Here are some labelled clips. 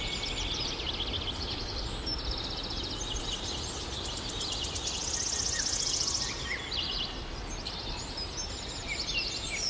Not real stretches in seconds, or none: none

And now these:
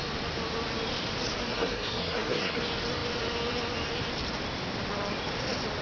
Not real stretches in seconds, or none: 1.5-2.6 (codec, SNAC)